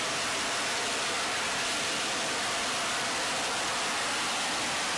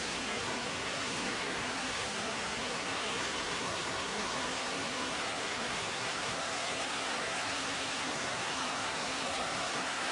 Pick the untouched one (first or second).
first